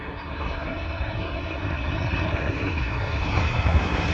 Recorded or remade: remade